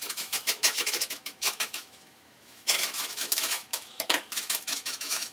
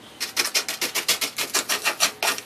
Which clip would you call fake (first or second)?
first